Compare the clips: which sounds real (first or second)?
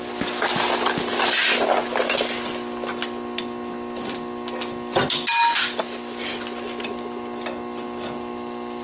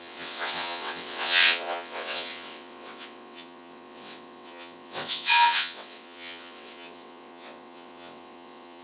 first